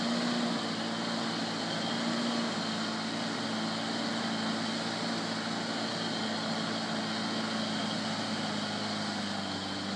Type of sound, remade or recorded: recorded